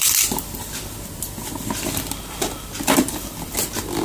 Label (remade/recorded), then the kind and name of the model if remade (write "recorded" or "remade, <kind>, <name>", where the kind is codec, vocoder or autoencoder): remade, vocoder, BigVGAN v2